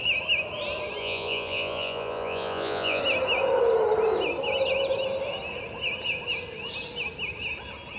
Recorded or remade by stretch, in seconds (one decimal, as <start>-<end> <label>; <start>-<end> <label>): 0.0-1.0 recorded; 1.0-3.0 remade; 3.0-8.0 recorded